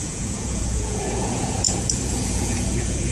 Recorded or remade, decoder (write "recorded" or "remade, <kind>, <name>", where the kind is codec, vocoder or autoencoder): remade, vocoder, Vocos